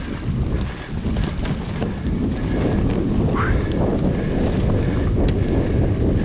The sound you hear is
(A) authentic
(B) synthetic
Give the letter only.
A